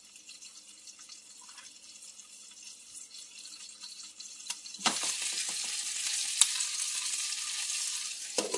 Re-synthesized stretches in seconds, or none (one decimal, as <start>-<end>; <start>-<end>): 3.3-5.0